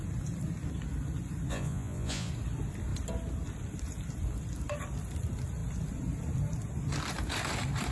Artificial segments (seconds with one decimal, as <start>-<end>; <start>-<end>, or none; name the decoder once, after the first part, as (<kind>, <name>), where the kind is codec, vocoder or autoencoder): 1.5-2.3 (vocoder, Vocos)